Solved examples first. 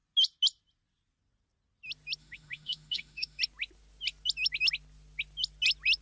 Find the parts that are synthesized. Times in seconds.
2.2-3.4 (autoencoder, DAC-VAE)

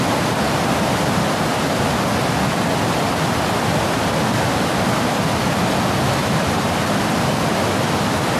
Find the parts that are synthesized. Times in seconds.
6.2-6.8 (vocoder, BigVGAN v2)

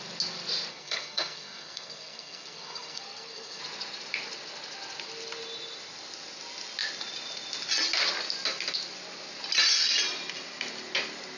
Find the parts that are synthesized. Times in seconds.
0.7-3.6 (codec, SNAC)

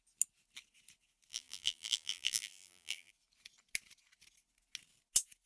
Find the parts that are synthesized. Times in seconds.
1.3-3.1 (vocoder, BigVGAN v2)

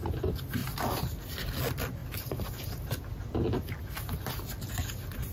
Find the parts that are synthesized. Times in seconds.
0.6-1.2 (vocoder, BigVGAN v2)

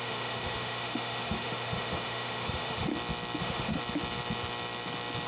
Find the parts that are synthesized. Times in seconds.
0.0-2.9 (autoencoder, DAC-VAE); 3.4-3.8

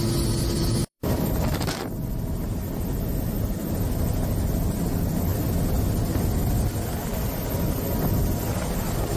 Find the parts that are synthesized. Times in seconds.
0.8-1.4 (vocoder, BigVGAN v2); 7.1-7.8

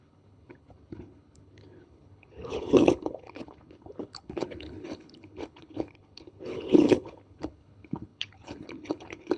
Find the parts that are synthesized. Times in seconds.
0.0-9.4 (codec, HILCodec)